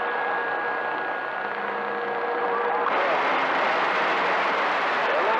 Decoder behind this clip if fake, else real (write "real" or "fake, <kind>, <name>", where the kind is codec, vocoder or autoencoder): fake, vocoder, BigVGAN v2